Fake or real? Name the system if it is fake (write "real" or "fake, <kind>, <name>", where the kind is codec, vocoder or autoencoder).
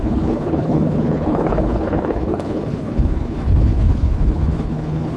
fake, codec, HILCodec